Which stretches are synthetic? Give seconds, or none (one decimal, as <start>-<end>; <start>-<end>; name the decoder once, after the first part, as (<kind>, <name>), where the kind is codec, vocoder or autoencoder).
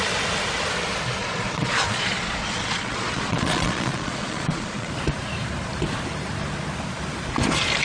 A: 1.2-4.9 (vocoder, Vocos)